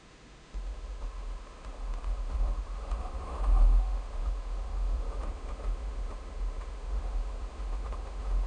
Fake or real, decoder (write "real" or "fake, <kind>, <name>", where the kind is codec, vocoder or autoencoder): fake, autoencoder, DAC-VAE